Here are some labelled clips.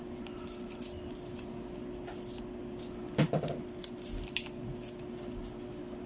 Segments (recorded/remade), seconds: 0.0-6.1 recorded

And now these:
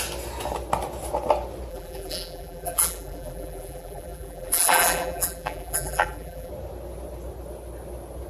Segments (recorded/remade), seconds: 0.0-1.7 recorded; 1.7-6.5 remade; 6.5-8.3 recorded

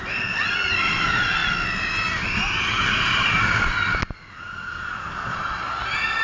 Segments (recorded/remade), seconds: 0.0-6.2 recorded

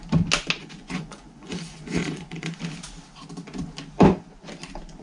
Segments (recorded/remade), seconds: 0.0-0.6 recorded; 0.6-2.6 remade; 2.6-5.0 recorded